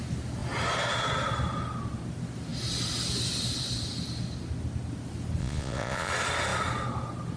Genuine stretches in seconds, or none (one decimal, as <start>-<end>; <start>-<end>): 0.0-5.4; 6.1-7.4